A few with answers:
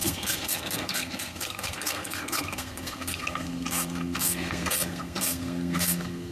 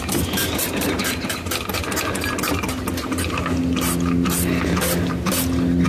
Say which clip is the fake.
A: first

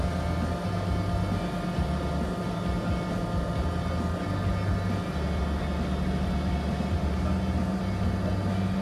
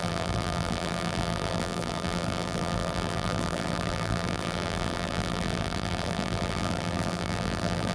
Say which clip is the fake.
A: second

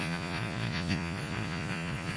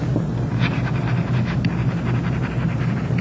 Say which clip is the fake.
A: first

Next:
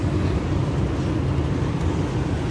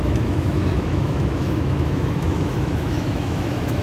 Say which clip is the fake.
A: second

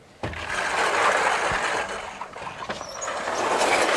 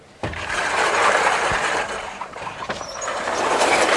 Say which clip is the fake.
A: second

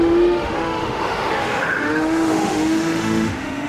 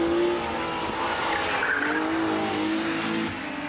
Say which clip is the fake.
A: first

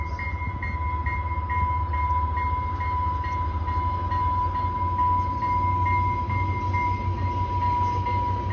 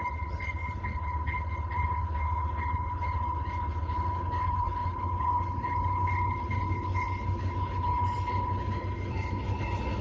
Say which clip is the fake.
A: second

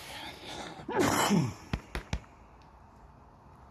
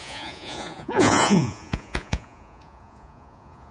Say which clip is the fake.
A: second